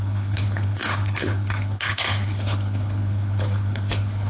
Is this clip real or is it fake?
fake